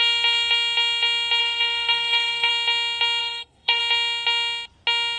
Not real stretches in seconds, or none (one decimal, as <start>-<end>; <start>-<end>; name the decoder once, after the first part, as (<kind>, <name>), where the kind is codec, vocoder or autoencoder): 1.4-2.5 (codec, SNAC); 3.2-3.8